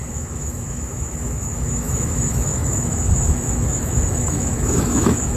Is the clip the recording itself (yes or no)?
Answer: no